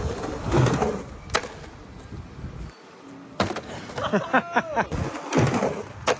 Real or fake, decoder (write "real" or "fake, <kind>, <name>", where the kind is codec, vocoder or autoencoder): real